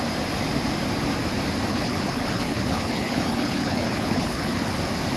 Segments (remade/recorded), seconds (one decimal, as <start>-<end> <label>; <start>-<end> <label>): 0.0-1.7 recorded; 1.7-4.8 remade; 4.8-5.2 recorded